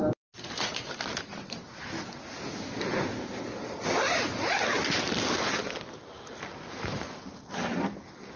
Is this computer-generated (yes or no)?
no